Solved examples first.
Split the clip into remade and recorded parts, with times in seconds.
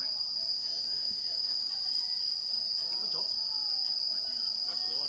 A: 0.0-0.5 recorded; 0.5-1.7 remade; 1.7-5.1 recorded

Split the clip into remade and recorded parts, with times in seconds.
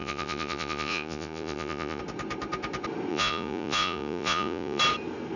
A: 0.0-2.0 remade; 2.0-3.1 recorded; 3.1-4.8 remade; 4.8-5.4 recorded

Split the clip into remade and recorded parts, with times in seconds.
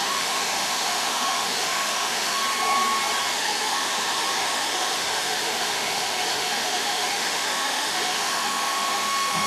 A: 0.0-2.4 remade; 2.4-3.2 recorded; 3.2-9.5 remade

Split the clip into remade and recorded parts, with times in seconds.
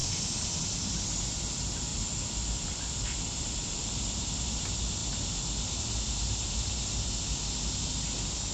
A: 0.0-0.6 remade; 0.6-1.9 recorded; 1.9-3.8 remade; 3.8-8.5 recorded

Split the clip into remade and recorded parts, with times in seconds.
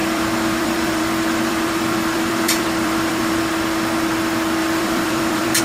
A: 0.0-3.4 remade; 3.4-4.6 recorded; 4.6-5.6 remade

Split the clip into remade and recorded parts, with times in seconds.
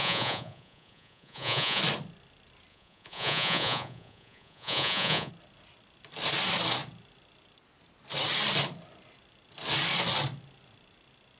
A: 0.0-1.8 remade; 1.8-2.7 recorded; 2.7-5.3 remade; 5.3-11.4 recorded